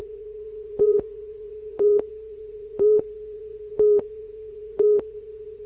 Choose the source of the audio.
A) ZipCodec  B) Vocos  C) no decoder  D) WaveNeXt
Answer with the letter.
B